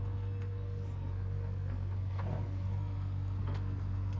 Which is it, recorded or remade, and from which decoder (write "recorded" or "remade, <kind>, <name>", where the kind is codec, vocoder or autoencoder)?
remade, codec, SNAC